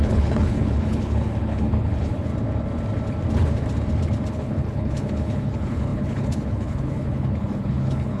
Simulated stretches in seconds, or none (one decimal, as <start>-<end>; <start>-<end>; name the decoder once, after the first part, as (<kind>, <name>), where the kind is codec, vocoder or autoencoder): 0.0-2.3 (codec, HILCodec); 4.3-8.2